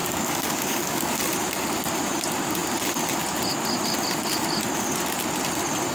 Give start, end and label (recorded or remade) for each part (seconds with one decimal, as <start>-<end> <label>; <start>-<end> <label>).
0.0-1.1 remade; 1.1-5.9 recorded